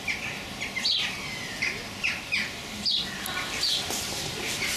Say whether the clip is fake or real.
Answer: real